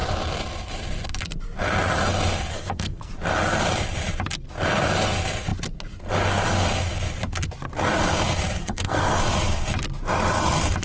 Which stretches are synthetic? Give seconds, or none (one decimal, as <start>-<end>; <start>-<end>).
2.5-3.1; 8.6-9.2